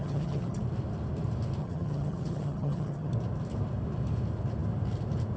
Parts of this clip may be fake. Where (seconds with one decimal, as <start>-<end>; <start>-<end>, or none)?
0.0-0.6; 1.6-3.1